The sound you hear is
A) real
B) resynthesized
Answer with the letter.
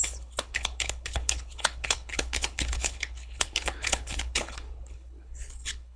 B